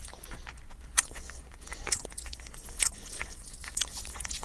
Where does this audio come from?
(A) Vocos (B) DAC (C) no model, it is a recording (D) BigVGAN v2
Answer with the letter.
A